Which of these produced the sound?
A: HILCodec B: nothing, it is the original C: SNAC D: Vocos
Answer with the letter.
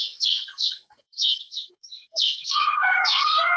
C